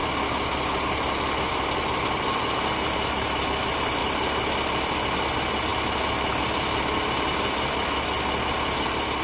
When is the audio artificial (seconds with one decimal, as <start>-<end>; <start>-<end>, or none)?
none